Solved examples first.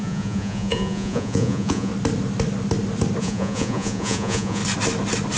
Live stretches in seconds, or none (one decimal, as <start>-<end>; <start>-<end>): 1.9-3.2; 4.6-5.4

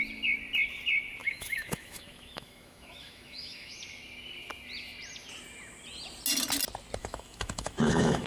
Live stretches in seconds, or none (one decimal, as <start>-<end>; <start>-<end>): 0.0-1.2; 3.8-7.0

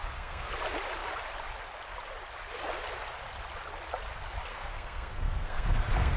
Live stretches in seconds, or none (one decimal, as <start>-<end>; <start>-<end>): 0.5-4.5

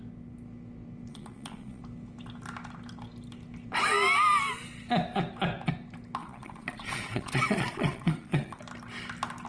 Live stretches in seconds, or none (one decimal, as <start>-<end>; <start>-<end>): 0.0-1.1; 1.8-6.2; 8.6-9.5